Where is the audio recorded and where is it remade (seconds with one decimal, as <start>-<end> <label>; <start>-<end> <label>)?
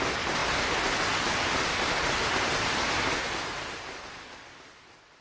0.0-5.2 recorded